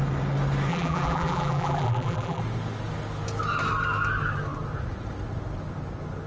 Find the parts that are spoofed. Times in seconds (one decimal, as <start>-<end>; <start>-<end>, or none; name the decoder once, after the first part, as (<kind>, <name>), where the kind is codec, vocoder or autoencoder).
0.7-2.4 (vocoder, BigVGAN v2)